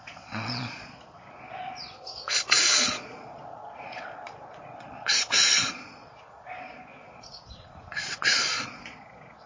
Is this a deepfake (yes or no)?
yes